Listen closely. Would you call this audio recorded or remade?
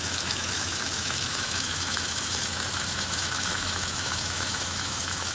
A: remade